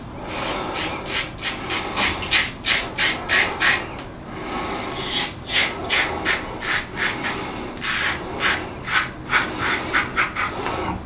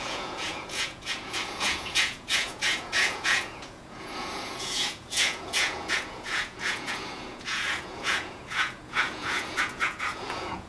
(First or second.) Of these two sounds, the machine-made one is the second